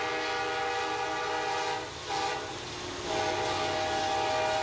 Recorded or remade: recorded